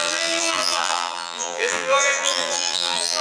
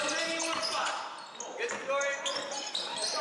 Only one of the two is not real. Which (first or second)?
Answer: first